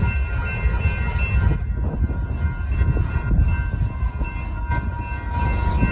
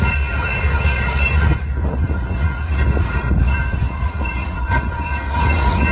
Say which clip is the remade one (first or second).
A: second